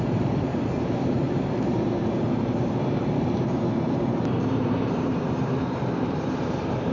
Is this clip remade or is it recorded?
remade